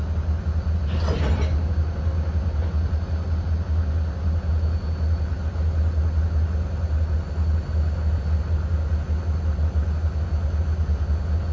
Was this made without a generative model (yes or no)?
yes